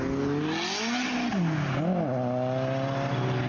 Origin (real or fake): real